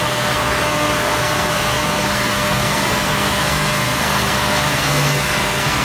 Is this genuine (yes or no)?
no